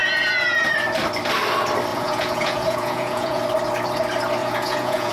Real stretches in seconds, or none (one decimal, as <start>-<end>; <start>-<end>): 0.7-1.9; 3.4-4.4